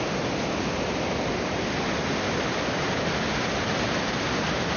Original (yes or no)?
yes